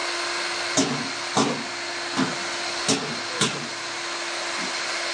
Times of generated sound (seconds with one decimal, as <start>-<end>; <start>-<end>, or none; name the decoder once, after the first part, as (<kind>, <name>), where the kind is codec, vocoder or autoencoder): none